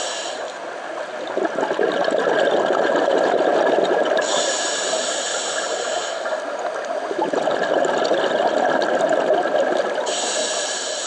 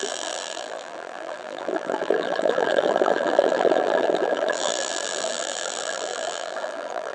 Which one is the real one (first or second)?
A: first